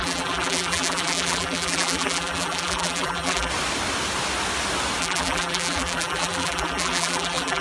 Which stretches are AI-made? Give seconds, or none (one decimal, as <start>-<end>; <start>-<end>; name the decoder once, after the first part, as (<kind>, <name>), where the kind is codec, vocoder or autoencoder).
0.0-3.5 (vocoder, BigVGAN v2); 5.0-7.6